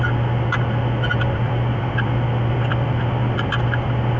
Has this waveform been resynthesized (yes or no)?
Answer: no